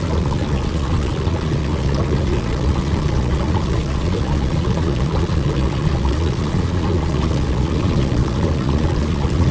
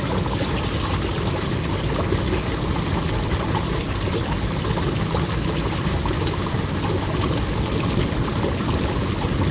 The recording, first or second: second